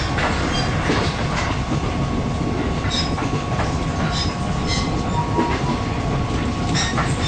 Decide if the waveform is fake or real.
real